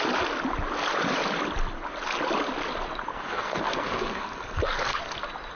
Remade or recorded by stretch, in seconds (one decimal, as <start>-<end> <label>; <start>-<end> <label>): 0.0-3.1 recorded; 3.1-5.0 remade; 5.0-5.6 recorded